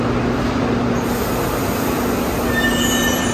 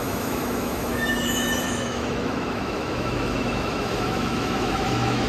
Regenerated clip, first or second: second